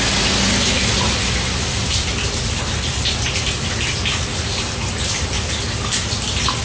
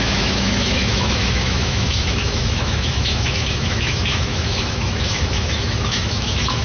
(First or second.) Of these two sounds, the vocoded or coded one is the second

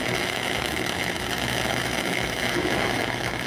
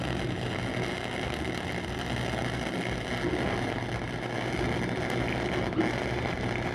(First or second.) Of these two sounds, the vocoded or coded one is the first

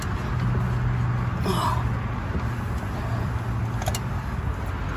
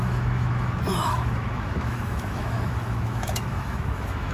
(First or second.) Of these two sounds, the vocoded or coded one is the second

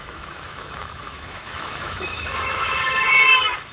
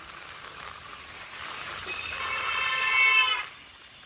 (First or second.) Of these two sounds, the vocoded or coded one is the first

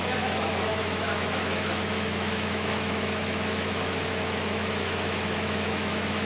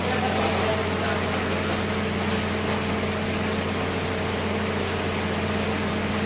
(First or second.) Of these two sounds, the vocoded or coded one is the first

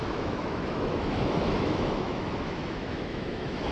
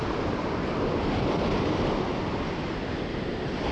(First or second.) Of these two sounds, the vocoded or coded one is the first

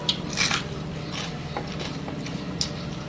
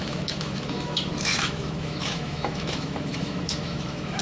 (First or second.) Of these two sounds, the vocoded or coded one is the second